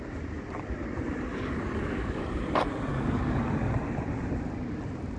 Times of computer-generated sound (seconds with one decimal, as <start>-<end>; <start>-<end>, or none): 1.3-2.2; 2.9-3.5